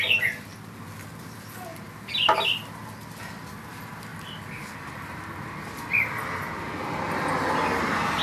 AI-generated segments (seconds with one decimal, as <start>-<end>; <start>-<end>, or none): none